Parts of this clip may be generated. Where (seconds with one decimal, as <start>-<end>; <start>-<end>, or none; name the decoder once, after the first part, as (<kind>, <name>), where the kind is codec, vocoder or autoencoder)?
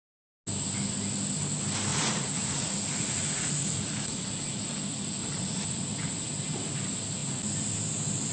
1.9-4.2 (vocoder, Vocos); 5.2-5.8